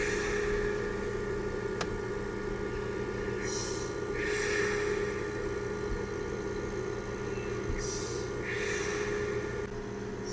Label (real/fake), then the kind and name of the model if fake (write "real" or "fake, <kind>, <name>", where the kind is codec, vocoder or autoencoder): real